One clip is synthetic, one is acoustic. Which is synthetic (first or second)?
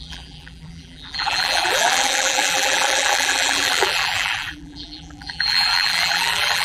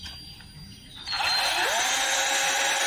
first